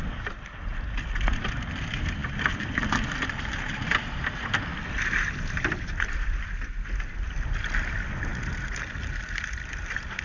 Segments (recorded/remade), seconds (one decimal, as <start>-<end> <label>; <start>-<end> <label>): 0.0-10.2 recorded